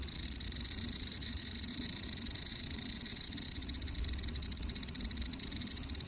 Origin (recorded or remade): remade